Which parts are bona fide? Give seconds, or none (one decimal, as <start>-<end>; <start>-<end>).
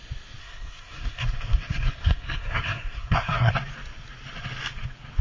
0.0-0.4; 3.5-5.2